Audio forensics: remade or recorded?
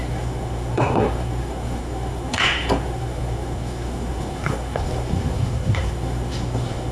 remade